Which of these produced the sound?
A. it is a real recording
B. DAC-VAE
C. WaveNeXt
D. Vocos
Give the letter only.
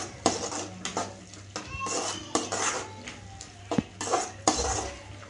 A